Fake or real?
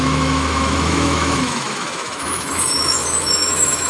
fake